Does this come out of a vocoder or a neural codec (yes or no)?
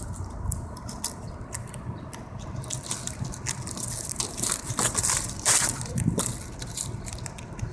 yes